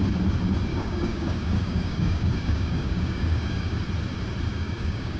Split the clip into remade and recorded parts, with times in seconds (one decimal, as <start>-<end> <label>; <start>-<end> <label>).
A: 0.0-0.7 recorded; 0.7-3.8 remade; 3.8-4.5 recorded; 4.5-5.2 remade